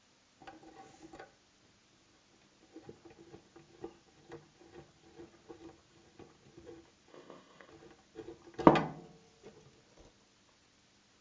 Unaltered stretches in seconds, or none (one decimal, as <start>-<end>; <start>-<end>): 0.0-7.1; 7.7-11.2